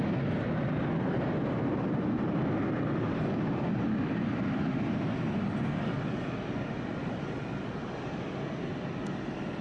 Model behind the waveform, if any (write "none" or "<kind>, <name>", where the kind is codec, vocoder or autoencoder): none